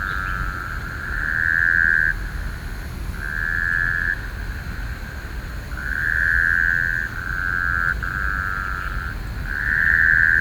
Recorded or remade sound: recorded